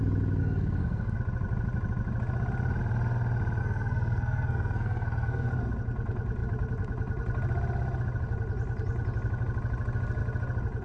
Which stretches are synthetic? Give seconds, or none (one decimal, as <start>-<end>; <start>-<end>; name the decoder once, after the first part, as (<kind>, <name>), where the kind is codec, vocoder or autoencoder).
0.4-1.2 (codec, SNAC); 3.6-5.5